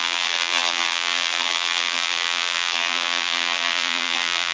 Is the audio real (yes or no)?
no